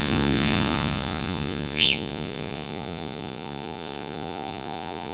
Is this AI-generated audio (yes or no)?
yes